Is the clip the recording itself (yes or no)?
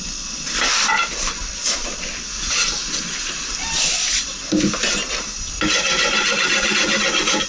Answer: yes